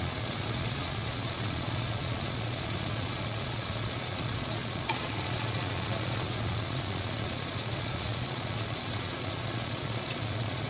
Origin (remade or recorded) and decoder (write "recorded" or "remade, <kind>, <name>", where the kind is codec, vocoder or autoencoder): remade, vocoder, Vocos